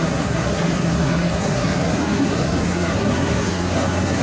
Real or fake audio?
fake